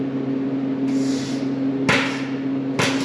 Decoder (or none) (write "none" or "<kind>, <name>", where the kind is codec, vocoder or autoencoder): none